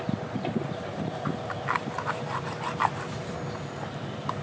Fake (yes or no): no